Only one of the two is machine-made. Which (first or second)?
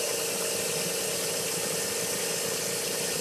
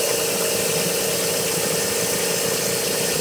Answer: first